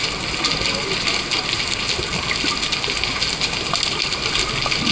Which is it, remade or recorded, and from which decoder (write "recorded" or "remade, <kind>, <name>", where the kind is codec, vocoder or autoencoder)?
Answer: recorded